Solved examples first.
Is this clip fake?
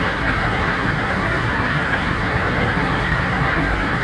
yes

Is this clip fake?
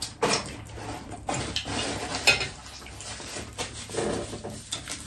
no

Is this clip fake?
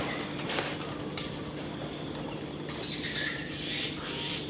no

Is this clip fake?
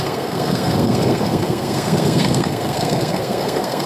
yes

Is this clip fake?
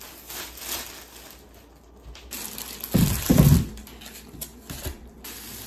no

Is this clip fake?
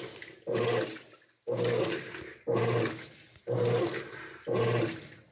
no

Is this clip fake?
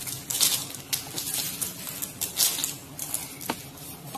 no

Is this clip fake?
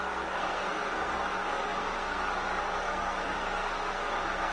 yes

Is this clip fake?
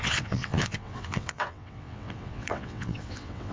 yes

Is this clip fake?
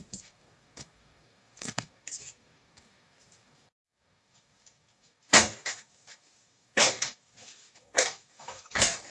yes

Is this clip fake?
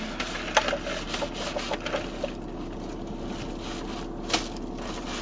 no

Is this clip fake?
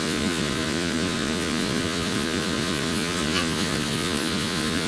yes